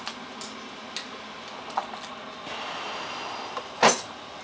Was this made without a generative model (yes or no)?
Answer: yes